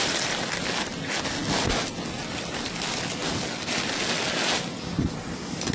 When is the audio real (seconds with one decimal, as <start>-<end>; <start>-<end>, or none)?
0.0-5.7